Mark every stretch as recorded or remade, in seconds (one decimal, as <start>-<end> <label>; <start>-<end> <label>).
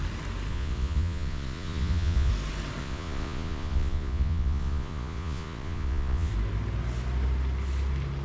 0.0-0.5 recorded; 0.5-2.3 remade; 2.3-2.8 recorded; 2.8-6.3 remade; 6.3-8.2 recorded